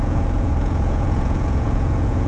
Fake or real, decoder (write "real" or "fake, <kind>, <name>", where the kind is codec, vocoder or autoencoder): fake, vocoder, Vocos